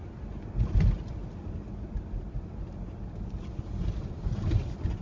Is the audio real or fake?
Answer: real